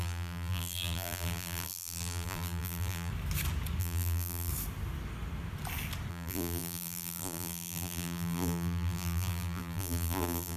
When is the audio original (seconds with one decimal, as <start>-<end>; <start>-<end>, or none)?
3.1-3.8; 4.5-6.1